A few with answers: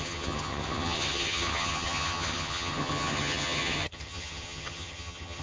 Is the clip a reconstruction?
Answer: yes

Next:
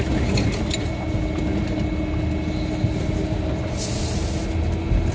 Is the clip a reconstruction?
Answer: no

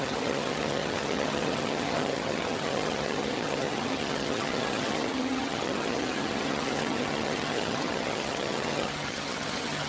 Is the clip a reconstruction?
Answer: yes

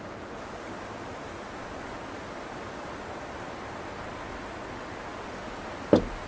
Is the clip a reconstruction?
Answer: no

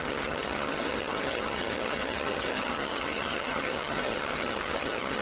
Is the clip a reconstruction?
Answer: yes